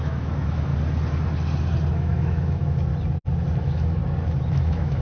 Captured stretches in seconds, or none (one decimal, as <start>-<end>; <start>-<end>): 0.7-1.9; 2.9-3.6; 4.0-4.5